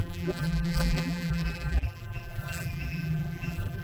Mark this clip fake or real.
fake